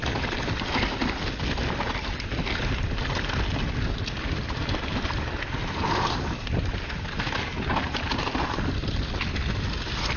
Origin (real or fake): real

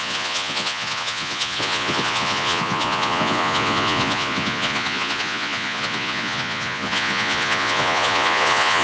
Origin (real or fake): fake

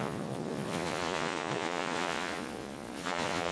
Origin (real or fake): fake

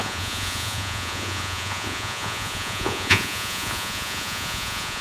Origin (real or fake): fake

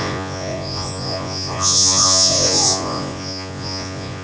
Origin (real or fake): fake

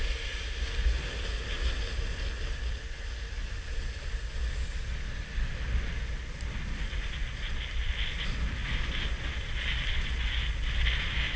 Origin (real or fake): real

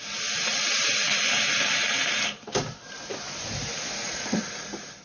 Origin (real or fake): real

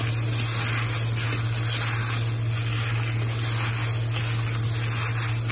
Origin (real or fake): real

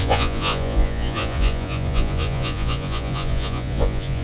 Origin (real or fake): fake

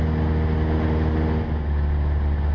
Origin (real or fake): real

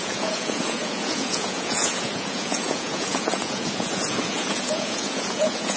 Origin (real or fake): fake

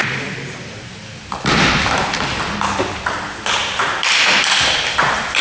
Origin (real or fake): real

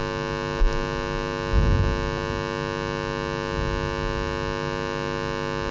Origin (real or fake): real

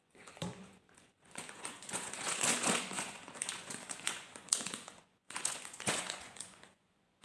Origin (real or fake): fake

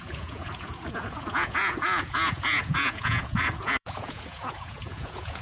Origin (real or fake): fake